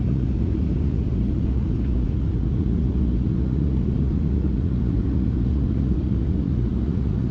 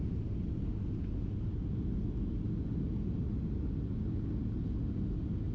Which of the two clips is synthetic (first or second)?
first